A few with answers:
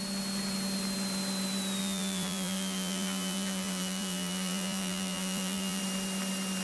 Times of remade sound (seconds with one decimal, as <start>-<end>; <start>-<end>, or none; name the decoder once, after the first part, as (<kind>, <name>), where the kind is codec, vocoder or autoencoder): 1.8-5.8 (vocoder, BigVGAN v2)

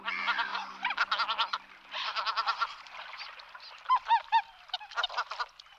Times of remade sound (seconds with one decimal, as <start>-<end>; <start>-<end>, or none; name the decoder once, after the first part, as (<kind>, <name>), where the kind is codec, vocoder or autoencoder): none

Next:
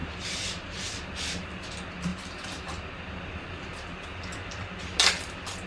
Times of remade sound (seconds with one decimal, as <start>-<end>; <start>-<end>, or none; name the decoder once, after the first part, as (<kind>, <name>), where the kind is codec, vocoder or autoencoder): 0.0-0.9 (vocoder, BigVGAN v2); 2.1-2.7; 3.7-4.8

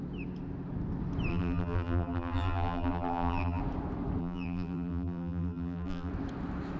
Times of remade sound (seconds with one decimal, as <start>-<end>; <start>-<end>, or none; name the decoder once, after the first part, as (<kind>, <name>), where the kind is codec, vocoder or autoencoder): 1.3-3.6 (vocoder, BigVGAN v2); 4.2-6.1

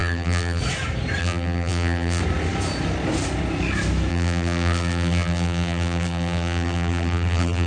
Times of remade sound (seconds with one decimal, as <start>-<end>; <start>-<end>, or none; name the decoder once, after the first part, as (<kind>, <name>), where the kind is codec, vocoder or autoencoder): 0.0-0.6 (vocoder, BigVGAN v2); 1.2-2.2; 4.1-7.7

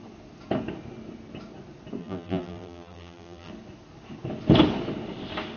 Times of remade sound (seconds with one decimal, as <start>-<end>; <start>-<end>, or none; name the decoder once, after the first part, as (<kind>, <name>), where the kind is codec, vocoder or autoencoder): 2.0-3.5 (vocoder, BigVGAN v2)